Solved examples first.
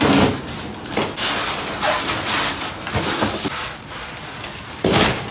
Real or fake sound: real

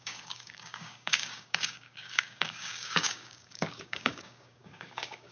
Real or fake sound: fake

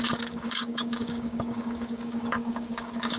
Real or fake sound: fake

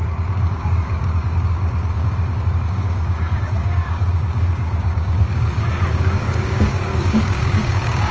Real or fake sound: fake